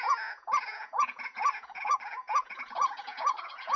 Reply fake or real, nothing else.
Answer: fake